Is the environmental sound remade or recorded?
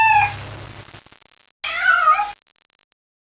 recorded